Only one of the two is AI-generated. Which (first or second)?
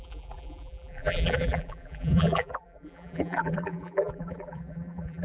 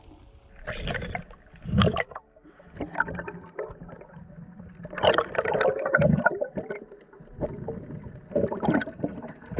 first